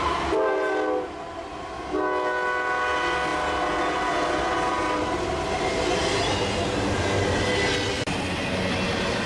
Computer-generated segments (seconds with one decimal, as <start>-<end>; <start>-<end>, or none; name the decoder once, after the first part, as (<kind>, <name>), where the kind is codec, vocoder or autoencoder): none